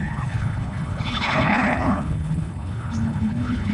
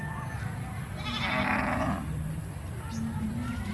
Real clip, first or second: second